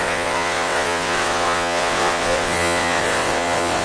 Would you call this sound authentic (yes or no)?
no